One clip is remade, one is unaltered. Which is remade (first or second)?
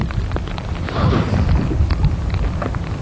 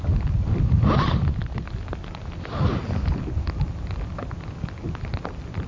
first